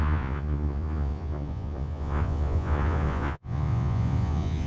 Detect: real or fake fake